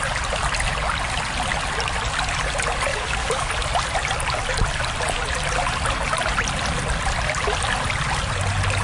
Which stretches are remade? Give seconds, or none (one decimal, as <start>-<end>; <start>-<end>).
2.9-3.5